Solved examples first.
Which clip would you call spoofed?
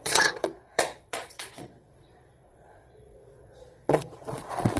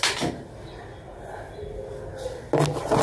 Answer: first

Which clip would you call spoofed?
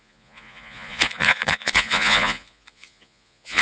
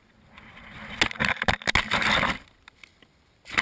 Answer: first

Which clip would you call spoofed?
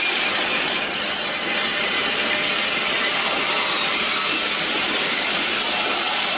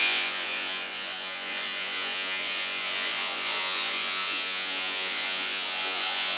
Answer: second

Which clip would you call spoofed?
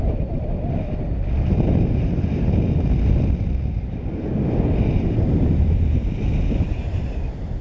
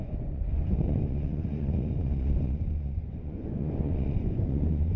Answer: second